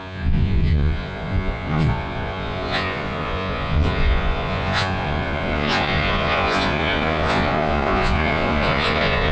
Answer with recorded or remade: remade